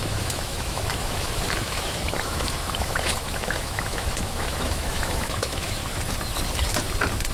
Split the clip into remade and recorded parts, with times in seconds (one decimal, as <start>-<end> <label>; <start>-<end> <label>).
0.0-5.8 remade; 5.8-7.3 recorded